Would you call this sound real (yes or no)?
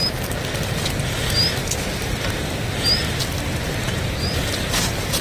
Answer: yes